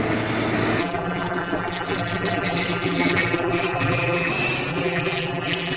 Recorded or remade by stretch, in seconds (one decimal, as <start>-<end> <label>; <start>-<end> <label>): 0.0-0.8 recorded; 0.8-4.3 remade; 4.3-4.7 recorded; 4.7-5.8 remade